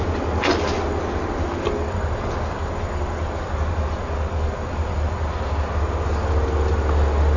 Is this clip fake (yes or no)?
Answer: no